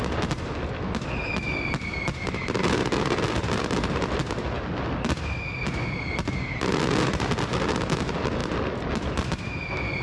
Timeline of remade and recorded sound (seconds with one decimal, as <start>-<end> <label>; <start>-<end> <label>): 0.0-10.0 recorded